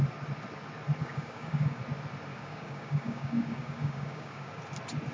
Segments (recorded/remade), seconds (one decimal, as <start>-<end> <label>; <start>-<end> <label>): 0.0-1.0 recorded; 1.0-1.8 remade; 1.8-2.3 recorded; 2.3-4.6 remade; 4.6-5.1 recorded